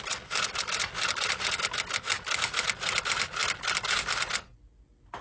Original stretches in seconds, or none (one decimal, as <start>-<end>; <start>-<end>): 0.0-5.2